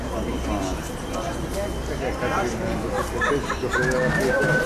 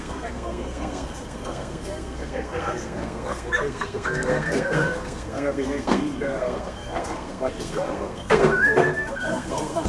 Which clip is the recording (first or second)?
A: first